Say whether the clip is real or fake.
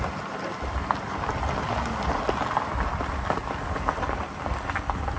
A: real